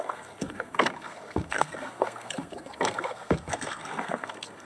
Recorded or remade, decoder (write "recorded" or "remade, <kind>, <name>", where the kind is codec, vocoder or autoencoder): remade, codec, SNAC